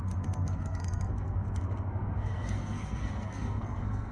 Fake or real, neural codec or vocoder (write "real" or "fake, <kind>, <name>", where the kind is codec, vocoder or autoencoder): fake, codec, SNAC